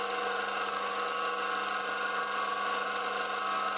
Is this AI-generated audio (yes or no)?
no